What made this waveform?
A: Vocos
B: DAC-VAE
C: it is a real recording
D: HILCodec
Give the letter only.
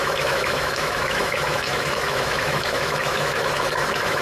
B